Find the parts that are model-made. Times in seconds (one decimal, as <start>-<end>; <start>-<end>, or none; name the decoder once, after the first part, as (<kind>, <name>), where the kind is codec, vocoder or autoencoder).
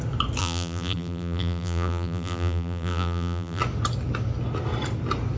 0.4-3.6 (vocoder, BigVGAN v2)